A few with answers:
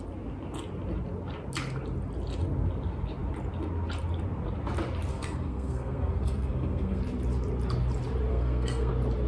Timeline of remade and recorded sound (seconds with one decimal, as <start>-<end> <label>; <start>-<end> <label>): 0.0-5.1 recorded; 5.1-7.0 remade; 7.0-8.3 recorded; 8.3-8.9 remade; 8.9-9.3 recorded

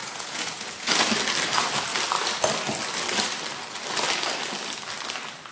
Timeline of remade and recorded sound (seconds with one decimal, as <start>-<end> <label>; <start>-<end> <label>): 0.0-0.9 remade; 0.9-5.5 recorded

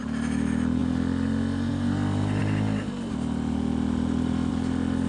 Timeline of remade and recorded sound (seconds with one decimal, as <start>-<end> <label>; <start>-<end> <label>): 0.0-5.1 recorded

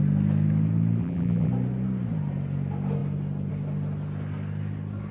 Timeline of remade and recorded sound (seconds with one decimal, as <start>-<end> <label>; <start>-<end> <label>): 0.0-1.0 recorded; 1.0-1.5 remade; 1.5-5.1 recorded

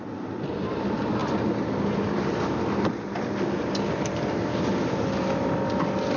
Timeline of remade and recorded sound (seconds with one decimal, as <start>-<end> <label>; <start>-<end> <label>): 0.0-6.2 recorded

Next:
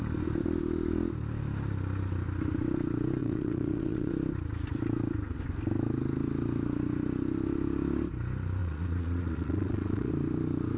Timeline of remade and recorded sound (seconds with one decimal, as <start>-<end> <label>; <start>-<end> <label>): 0.0-3.2 recorded; 3.2-4.1 remade; 4.1-8.6 recorded; 8.6-10.1 remade; 10.1-10.8 recorded

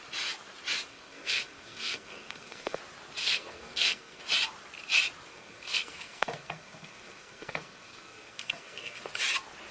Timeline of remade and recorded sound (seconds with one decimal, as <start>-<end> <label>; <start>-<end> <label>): 0.0-0.9 recorded; 0.9-2.8 remade; 2.8-3.2 recorded; 3.2-4.2 remade; 4.2-5.3 recorded; 5.3-9.0 remade; 9.0-9.7 recorded